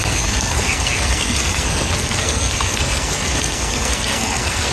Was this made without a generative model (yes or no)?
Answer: no